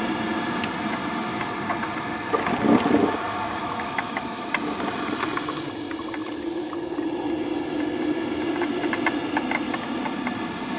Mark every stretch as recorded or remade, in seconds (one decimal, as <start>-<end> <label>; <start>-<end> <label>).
0.0-3.6 recorded; 3.6-4.5 remade; 4.5-6.2 recorded; 6.2-6.7 remade; 6.7-10.8 recorded